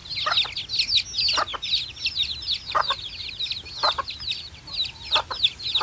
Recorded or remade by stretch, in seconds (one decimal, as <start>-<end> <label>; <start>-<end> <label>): 0.0-1.5 recorded; 1.5-3.2 remade; 3.2-3.8 recorded; 3.8-4.6 remade; 4.6-5.8 recorded